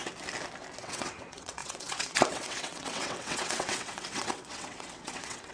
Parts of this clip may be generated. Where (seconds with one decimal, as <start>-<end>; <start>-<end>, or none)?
0.8-5.5